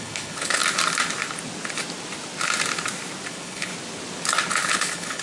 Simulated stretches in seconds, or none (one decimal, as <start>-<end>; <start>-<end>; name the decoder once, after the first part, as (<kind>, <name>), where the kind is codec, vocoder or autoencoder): 0.0-0.6 (codec, HILCodec); 3.3-3.7; 4.7-5.2